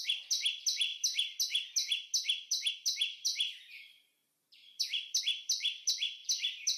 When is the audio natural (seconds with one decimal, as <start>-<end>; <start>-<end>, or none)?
none